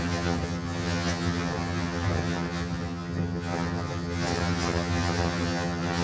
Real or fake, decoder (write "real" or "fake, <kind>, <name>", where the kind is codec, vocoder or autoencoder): fake, vocoder, HiFi-GAN